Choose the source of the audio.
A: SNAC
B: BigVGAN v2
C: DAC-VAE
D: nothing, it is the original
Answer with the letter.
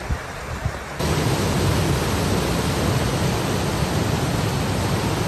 D